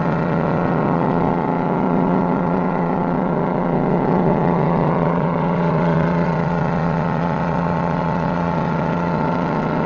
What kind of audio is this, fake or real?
fake